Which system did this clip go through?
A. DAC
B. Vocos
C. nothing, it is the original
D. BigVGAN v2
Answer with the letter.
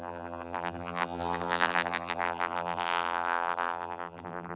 D